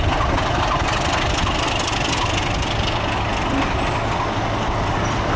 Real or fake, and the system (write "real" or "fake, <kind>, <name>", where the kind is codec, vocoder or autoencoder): real